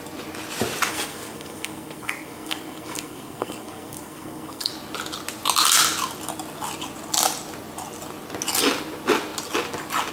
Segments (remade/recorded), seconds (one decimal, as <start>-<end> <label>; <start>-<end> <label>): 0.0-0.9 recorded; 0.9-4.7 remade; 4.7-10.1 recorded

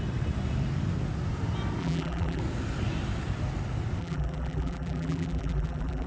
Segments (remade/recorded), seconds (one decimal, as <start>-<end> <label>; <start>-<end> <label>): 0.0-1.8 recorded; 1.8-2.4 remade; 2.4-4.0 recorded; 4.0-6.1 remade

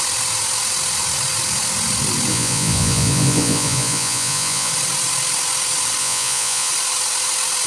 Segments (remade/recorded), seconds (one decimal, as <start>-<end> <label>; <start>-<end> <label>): 0.0-2.3 recorded; 2.3-4.7 remade; 4.7-6.0 recorded; 6.0-6.7 remade; 6.7-7.7 recorded